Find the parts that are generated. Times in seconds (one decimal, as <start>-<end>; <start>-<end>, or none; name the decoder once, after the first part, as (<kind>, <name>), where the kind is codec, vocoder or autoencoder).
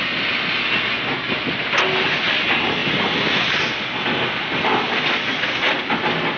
none